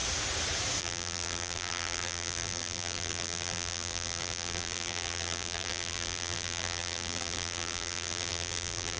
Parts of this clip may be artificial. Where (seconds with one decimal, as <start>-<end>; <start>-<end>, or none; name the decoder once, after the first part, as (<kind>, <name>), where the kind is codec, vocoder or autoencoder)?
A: 0.8-9.0 (vocoder, BigVGAN v2)